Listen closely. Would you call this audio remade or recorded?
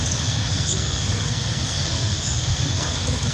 remade